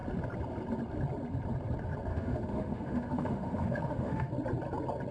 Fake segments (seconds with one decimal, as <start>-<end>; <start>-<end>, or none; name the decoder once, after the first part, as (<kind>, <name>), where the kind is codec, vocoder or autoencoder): 2.1-4.3 (autoencoder, DAC-VAE)